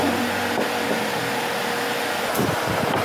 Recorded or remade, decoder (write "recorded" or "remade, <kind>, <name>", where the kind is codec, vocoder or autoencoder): recorded